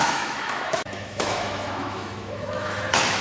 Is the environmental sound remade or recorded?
remade